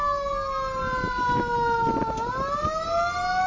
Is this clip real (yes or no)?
yes